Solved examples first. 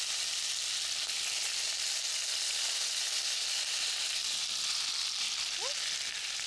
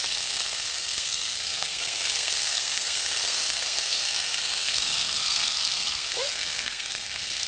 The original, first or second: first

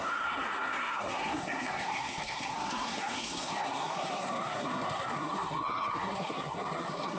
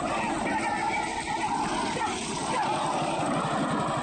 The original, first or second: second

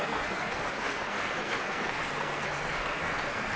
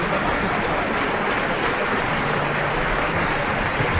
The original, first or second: second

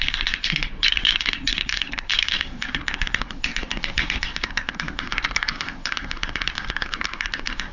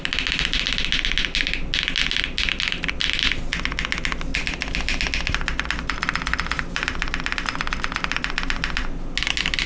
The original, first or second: second